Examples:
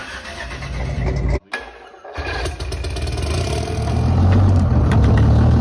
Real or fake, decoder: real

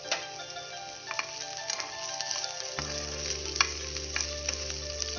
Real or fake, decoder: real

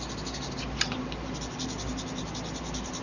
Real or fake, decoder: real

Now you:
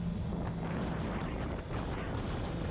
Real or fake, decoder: real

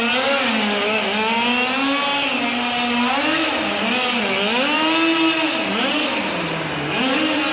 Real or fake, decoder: real